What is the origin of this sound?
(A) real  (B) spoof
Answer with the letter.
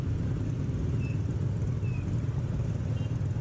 A